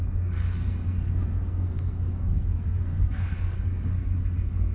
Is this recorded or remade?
remade